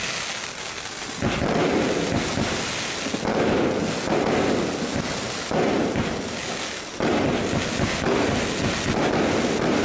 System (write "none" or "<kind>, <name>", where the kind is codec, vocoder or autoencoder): none